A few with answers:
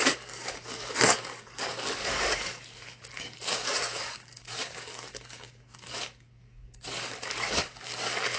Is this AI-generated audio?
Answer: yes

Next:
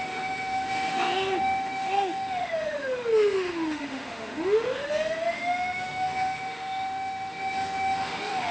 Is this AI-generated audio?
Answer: yes